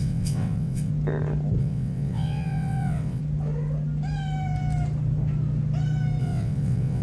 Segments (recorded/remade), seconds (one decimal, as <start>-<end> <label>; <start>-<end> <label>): 0.0-0.9 remade; 0.9-1.6 recorded; 1.6-3.2 remade; 3.2-6.2 recorded; 6.2-7.0 remade